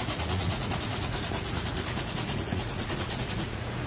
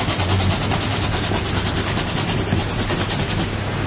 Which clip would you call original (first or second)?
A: second